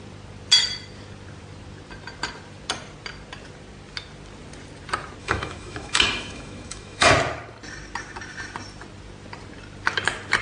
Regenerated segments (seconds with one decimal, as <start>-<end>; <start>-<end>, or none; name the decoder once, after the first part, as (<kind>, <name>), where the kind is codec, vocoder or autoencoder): 5.2-7.1 (autoencoder, DAC-VAE)

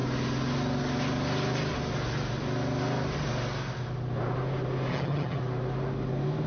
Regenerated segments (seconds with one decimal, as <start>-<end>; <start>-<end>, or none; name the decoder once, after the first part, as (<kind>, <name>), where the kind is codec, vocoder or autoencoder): 4.9-5.4 (vocoder, HiFi-GAN)